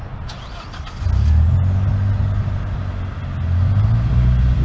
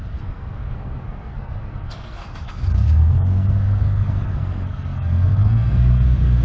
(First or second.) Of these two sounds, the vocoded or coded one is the second